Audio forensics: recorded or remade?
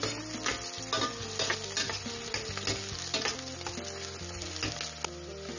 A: recorded